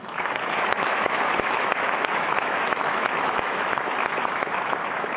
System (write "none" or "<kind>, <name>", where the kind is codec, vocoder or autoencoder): autoencoder, DAC-VAE